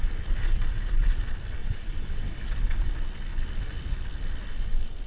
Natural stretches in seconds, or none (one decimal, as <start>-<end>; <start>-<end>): 0.0-1.6; 2.9-5.1